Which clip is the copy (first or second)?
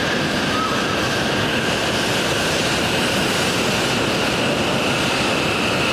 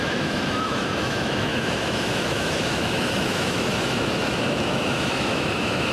second